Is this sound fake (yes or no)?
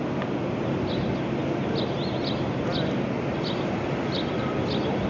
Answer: no